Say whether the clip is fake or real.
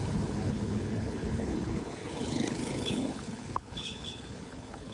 fake